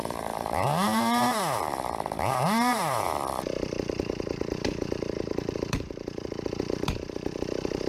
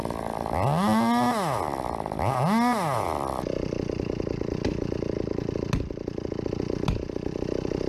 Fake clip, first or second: first